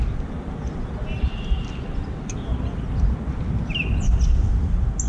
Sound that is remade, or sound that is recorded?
recorded